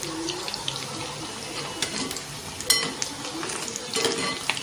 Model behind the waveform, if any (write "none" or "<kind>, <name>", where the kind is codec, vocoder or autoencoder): none